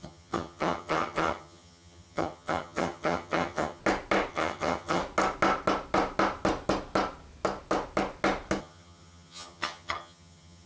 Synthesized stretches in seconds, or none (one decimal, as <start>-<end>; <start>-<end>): 0.0-3.8; 4.3-5.0; 8.6-10.7